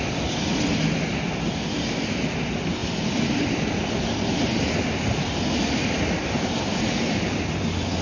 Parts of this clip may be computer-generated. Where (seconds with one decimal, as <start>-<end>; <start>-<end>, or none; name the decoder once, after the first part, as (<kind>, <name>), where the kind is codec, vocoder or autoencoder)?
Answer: 2.8-7.6 (vocoder, BigVGAN v2)